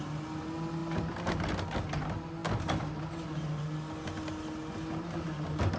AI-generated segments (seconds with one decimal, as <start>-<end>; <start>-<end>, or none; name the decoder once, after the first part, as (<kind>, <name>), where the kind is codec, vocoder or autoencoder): none